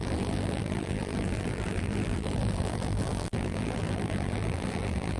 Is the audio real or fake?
fake